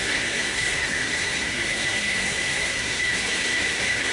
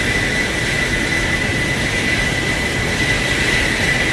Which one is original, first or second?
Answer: second